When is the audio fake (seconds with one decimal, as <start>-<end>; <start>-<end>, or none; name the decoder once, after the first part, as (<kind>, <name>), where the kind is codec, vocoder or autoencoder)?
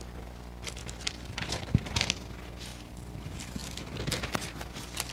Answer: 0.8-1.6 (vocoder, BigVGAN v2); 2.7-3.2